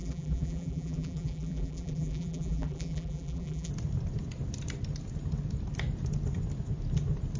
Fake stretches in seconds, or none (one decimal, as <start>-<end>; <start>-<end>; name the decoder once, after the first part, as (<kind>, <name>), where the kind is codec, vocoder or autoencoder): 0.0-3.7 (vocoder, BigVGAN v2)